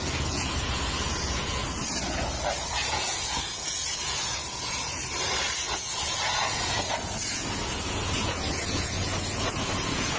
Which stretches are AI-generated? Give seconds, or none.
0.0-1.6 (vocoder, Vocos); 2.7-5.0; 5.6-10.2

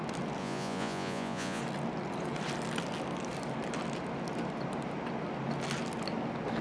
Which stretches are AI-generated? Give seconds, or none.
0.4-1.6 (vocoder, Vocos)